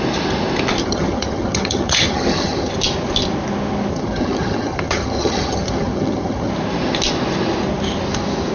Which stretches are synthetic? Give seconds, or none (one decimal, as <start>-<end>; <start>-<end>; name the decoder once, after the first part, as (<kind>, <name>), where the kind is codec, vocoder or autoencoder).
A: 0.8-2.7 (vocoder, HiFi-GAN); 3.9-6.5